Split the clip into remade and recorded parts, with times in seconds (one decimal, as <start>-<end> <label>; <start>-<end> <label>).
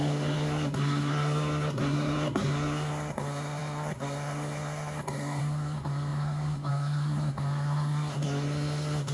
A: 0.0-9.1 remade